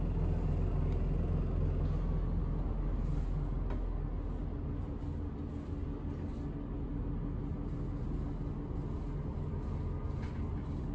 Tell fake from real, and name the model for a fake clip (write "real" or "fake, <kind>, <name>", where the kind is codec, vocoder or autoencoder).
real